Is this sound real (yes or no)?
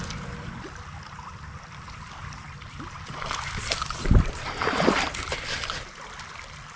yes